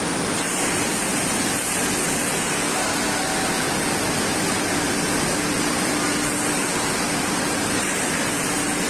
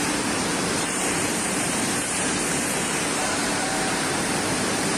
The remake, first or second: second